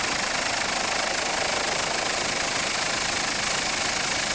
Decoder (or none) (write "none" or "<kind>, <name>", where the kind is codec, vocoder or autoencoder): none